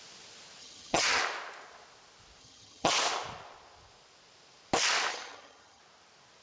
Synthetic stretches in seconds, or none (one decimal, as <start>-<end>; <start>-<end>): 0.6-1.2; 2.4-2.9; 5.1-5.8